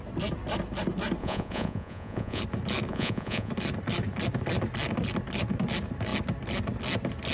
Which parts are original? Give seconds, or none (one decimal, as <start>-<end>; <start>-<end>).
0.0-1.2; 2.4-2.9; 3.5-7.3